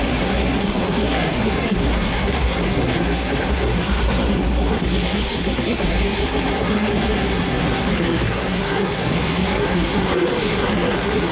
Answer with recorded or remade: remade